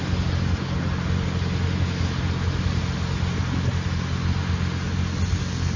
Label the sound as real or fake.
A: real